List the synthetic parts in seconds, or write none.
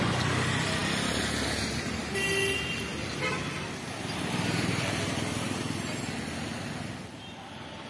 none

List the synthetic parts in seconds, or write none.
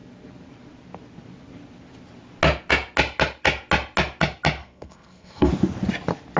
4.6-5.5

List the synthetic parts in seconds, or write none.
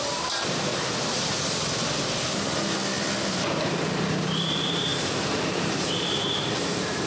0.0-0.7; 3.4-7.1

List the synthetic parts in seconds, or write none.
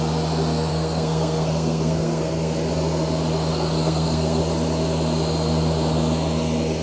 0.7-2.7; 3.5-4.4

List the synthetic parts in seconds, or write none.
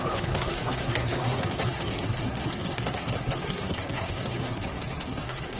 0.0-5.6